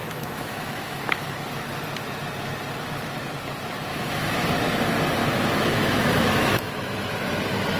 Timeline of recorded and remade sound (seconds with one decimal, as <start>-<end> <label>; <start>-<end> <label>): 0.0-1.3 remade; 1.3-3.9 recorded; 3.9-4.5 remade; 4.5-5.2 recorded; 5.2-7.1 remade; 7.1-7.8 recorded